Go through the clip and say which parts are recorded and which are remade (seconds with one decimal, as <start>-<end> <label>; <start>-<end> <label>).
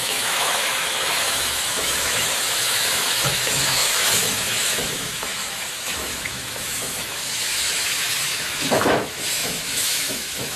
0.0-10.6 remade